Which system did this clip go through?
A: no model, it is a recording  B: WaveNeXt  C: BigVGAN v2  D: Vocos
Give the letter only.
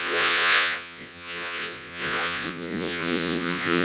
D